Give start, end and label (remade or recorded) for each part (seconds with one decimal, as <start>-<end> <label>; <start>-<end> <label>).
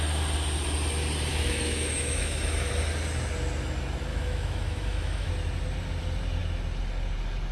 0.0-1.3 recorded; 1.3-2.7 remade; 2.7-4.1 recorded; 4.1-5.3 remade; 5.3-7.5 recorded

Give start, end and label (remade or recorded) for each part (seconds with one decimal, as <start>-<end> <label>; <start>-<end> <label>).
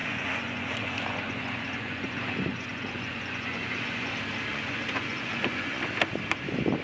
0.0-4.1 remade; 4.1-4.5 recorded; 4.5-5.9 remade; 5.9-6.8 recorded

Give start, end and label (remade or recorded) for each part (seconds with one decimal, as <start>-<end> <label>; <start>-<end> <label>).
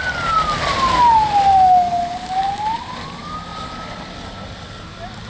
0.0-5.3 recorded